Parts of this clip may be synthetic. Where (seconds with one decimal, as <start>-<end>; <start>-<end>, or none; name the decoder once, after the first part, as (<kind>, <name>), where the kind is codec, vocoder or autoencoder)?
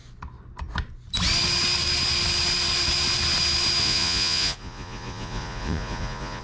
3.8-6.4 (vocoder, Vocos)